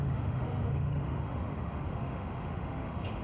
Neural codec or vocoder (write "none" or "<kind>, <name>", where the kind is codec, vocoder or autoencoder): autoencoder, DAC-VAE